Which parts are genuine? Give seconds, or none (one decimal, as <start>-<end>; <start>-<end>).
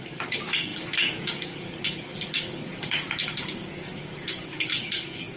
none